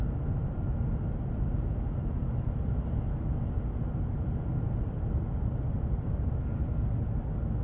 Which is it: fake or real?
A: real